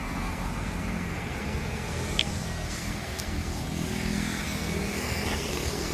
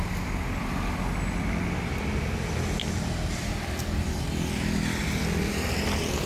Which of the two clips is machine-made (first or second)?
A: first